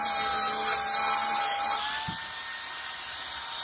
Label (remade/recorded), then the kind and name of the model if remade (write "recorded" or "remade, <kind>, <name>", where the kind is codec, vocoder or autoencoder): recorded